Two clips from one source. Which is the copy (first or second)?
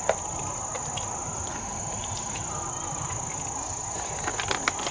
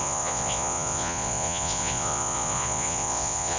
second